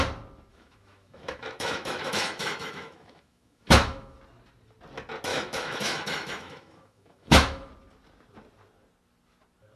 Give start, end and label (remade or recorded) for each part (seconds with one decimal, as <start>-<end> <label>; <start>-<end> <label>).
0.0-0.5 recorded; 0.5-4.2 remade; 4.2-5.3 recorded; 5.3-7.7 remade; 7.7-9.8 recorded